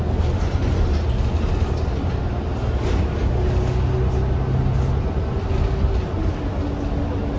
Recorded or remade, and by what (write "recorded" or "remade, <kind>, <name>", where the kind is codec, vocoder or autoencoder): recorded